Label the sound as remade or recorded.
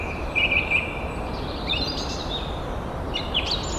recorded